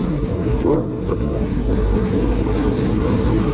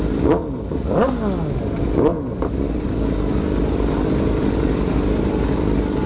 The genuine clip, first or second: second